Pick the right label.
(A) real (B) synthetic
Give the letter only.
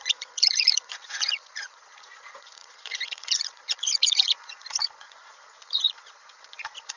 B